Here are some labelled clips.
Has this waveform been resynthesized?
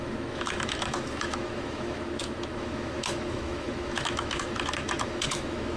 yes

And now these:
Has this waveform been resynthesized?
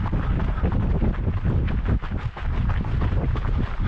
no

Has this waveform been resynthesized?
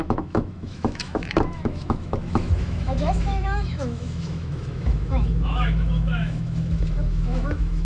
yes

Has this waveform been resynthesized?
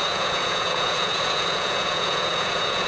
yes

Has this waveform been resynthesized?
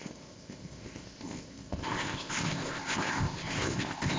yes